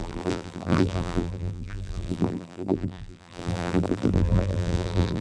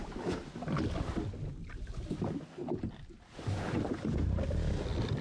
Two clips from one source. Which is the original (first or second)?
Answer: second